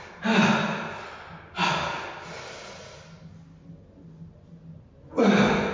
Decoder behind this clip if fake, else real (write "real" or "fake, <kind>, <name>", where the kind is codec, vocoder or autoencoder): real